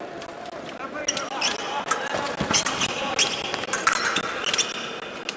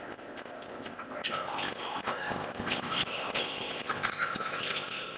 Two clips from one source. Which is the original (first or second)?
first